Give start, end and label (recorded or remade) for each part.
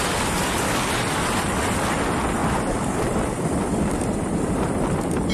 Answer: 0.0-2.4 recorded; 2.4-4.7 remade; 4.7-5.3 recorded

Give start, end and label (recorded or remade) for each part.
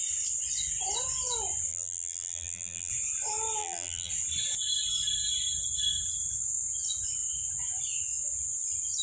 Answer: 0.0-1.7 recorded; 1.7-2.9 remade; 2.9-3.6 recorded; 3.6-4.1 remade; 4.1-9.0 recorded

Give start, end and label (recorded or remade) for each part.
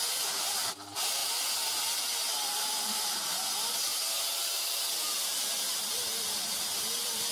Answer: 0.0-1.2 remade; 1.2-2.8 recorded; 2.8-7.3 remade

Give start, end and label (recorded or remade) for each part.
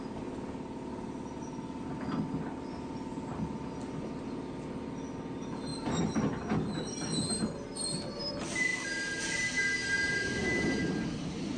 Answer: 0.0-11.6 recorded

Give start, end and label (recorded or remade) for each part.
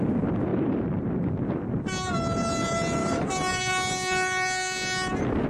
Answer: 0.0-0.5 recorded; 0.5-1.3 remade; 1.3-3.0 recorded; 3.0-3.6 remade; 3.6-5.5 recorded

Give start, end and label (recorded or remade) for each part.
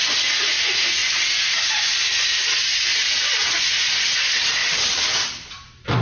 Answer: 0.0-4.6 recorded; 4.6-6.0 remade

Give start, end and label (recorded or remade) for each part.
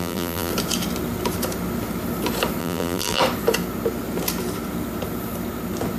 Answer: 0.0-0.5 remade; 0.5-2.6 recorded; 2.6-3.2 remade; 3.2-6.0 recorded